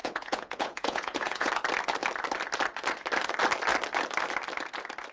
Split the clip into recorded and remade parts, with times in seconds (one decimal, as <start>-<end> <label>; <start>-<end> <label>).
0.0-1.5 remade; 1.5-5.1 recorded